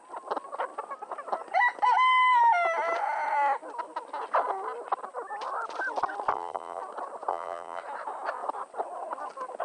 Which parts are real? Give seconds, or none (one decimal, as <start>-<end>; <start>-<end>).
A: 0.0-6.3; 6.8-7.3; 7.8-9.6